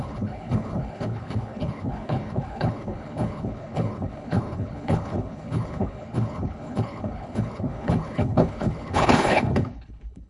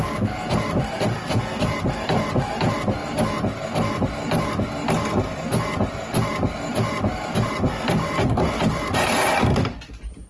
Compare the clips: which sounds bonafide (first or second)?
second